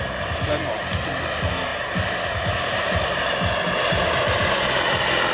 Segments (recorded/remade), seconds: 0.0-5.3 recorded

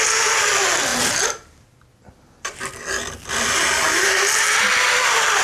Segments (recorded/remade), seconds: 0.0-5.4 recorded

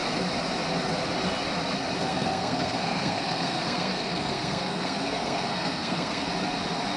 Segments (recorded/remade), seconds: 0.0-2.1 recorded; 2.1-6.3 remade; 6.3-7.0 recorded

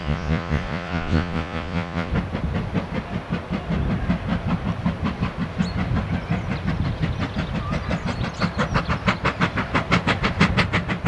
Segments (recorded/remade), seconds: 0.0-2.1 remade; 2.1-11.1 recorded

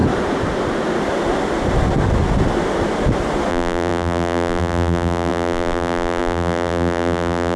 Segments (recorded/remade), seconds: 0.0-3.5 recorded; 3.5-7.6 remade

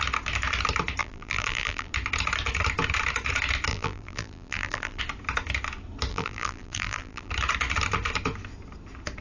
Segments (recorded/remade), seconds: 0.0-1.0 recorded; 1.0-1.9 remade; 1.9-3.7 recorded; 3.7-5.0 remade; 5.0-6.1 recorded; 6.1-7.3 remade; 7.3-9.2 recorded

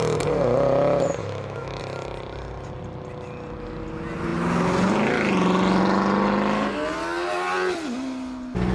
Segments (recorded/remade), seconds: 0.0-1.2 recorded; 1.2-1.8 remade; 1.8-8.7 recorded

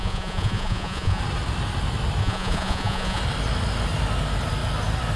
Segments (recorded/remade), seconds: 0.0-1.2 remade; 1.2-2.2 recorded; 2.2-3.2 remade; 3.2-5.2 recorded